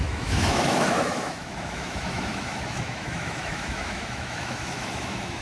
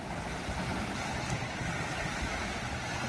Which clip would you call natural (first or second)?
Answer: second